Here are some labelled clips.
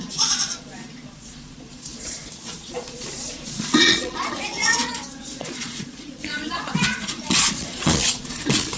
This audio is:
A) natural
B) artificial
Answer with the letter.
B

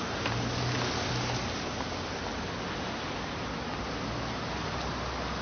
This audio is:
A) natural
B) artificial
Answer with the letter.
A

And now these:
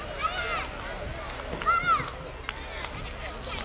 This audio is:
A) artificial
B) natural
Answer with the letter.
B